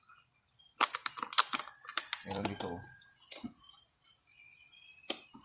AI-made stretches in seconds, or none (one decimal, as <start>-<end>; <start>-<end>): 1.9-2.6